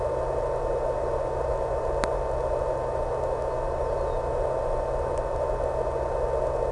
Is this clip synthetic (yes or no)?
no